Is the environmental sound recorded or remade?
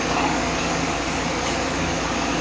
remade